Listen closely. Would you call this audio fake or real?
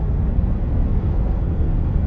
fake